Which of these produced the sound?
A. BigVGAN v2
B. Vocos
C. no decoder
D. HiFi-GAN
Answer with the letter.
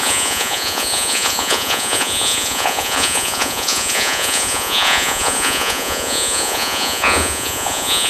B